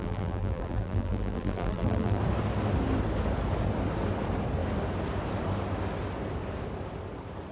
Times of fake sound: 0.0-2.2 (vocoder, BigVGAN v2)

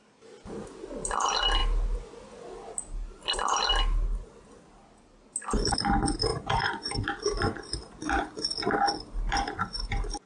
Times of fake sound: 6.3-6.9 (vocoder, Vocos)

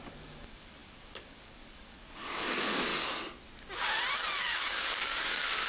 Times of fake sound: 0.0-2.9 (codec, DAC); 4.4-5.7

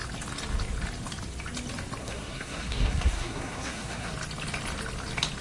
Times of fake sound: 2.0-4.1 (codec, SNAC)

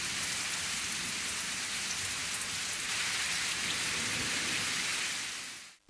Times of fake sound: none

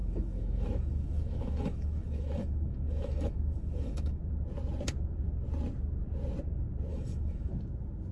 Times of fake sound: 0.0-4.2 (autoencoder, DAC-VAE); 6.9-7.5

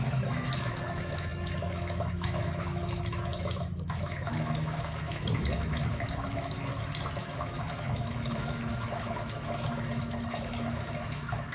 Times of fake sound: 0.0-6.7 (autoencoder, DAC-VAE); 7.2-11.5

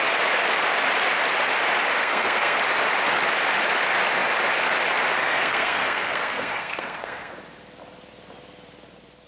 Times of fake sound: 2.0-2.6 (codec, SNAC); 5.2-7.3